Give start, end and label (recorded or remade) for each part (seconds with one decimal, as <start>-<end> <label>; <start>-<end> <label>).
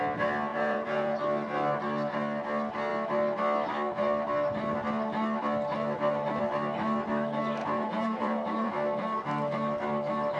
0.0-0.5 recorded; 0.5-1.2 remade; 1.2-7.6 recorded; 7.6-8.7 remade; 8.7-10.4 recorded